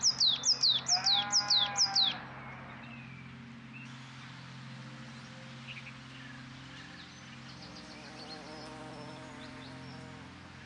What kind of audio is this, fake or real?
real